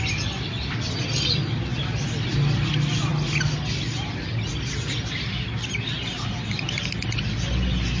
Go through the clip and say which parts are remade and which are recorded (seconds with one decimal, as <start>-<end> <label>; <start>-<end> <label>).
0.0-8.0 recorded